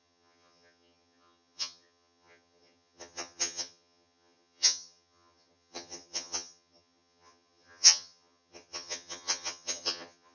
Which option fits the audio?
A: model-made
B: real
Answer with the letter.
A